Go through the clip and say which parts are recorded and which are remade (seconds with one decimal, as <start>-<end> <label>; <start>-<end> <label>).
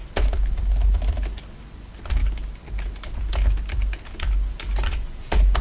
0.0-5.6 recorded